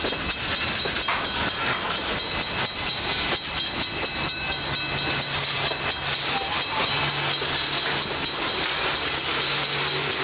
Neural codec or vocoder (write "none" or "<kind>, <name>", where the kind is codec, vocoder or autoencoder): none